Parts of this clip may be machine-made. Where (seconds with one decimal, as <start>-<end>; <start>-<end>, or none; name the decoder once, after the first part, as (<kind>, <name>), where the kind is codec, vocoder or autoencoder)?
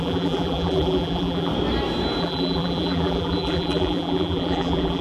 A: 0.0-1.5 (vocoder, BigVGAN v2); 2.2-5.0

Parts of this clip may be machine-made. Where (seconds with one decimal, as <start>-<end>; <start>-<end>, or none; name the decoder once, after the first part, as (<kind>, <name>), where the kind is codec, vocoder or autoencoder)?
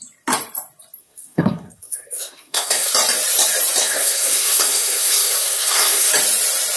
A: 1.0-2.9 (codec, SNAC); 3.8-6.1